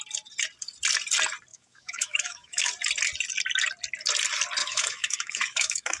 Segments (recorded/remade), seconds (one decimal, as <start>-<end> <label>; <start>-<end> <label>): 0.0-1.5 recorded; 1.5-2.7 remade; 2.7-4.6 recorded; 4.6-6.0 remade